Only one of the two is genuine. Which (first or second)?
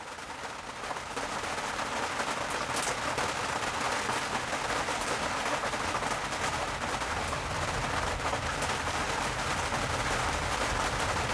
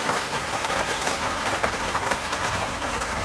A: first